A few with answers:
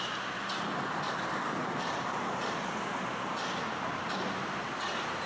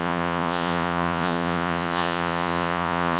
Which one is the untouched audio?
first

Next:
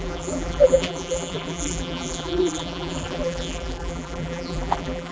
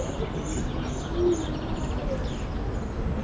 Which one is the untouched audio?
second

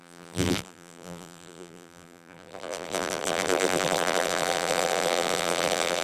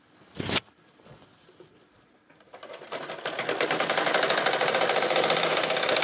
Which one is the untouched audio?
second